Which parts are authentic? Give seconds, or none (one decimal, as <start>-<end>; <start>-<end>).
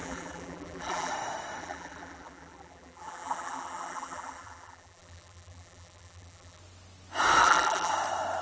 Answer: 1.1-1.6; 6.6-7.4; 7.9-8.4